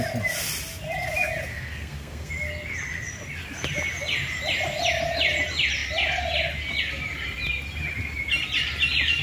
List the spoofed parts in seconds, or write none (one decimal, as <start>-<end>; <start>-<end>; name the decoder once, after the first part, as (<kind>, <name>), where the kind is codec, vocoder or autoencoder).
1.5-2.3 (codec, SNAC)